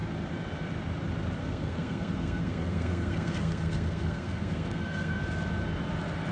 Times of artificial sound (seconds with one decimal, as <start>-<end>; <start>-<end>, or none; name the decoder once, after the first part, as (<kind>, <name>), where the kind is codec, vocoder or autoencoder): 1.4-5.2 (codec, SNAC)